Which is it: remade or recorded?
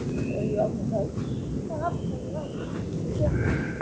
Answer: recorded